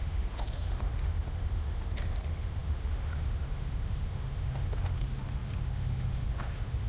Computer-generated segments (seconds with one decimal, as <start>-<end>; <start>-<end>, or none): 0.0-6.9